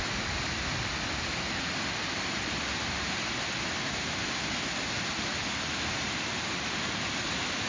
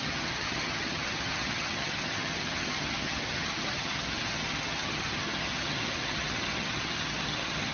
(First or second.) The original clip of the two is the first